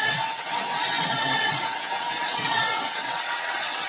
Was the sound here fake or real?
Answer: fake